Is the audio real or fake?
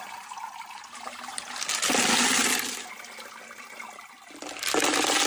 real